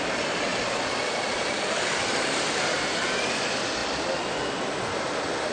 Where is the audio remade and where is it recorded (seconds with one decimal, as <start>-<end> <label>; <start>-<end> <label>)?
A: 0.0-5.5 recorded